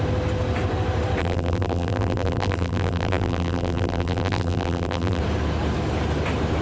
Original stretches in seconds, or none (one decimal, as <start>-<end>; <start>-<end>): 0.0-1.2; 5.2-6.6